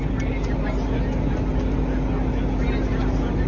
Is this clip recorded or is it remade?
recorded